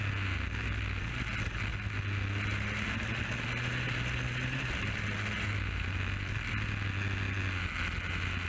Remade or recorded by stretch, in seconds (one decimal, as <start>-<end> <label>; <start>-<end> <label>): 0.0-8.5 recorded